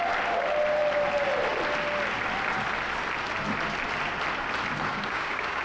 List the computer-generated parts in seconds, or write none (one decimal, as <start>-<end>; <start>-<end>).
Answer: 4.9-5.6